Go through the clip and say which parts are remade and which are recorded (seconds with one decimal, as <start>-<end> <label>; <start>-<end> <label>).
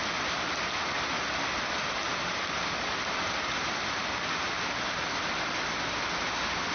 0.0-6.7 recorded